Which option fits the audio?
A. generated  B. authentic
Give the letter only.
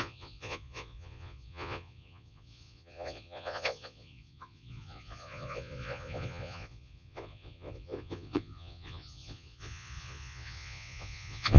A